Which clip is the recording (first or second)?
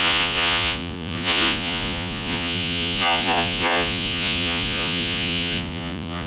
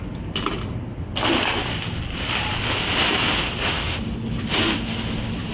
second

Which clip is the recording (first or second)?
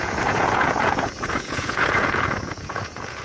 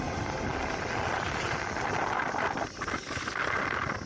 second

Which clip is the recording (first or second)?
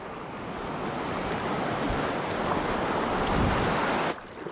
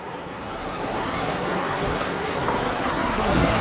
first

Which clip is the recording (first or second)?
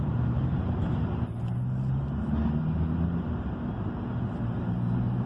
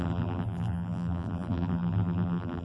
first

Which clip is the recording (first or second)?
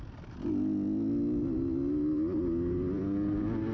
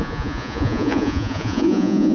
first